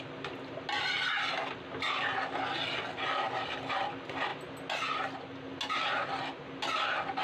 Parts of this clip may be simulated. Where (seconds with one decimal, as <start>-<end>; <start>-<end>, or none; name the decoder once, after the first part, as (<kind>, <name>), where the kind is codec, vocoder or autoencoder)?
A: none